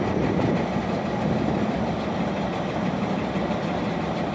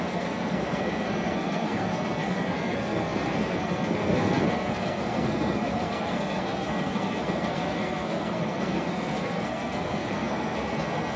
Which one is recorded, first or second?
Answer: first